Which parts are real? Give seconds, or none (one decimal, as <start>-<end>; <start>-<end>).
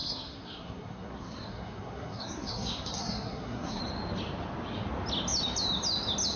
3.8-6.4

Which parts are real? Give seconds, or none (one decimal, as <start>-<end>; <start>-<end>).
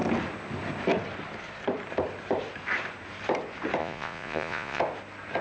0.0-3.8; 4.8-5.4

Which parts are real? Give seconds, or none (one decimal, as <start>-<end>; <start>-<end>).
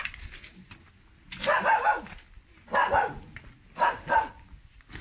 0.0-5.0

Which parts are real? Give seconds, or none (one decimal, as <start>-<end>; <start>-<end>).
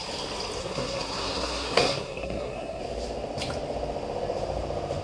0.0-0.6; 2.8-5.0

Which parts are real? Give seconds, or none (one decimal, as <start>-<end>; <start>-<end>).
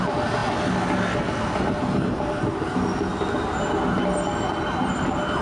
0.0-5.4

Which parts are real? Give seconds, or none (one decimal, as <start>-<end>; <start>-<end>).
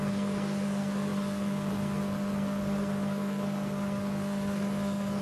none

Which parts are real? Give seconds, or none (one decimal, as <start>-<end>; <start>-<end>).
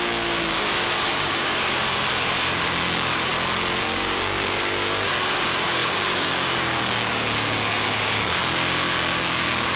3.3-3.8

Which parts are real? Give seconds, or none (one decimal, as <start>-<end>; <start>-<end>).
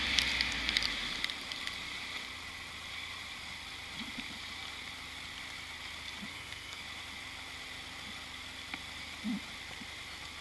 0.0-6.3; 6.8-10.4